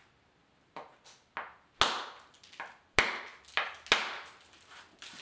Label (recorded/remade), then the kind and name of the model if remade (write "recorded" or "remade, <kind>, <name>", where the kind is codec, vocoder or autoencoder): recorded